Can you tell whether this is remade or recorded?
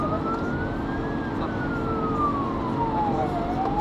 recorded